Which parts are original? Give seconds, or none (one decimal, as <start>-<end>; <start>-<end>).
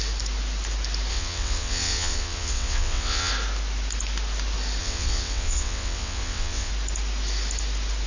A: 0.0-1.1; 3.3-4.8; 6.7-8.1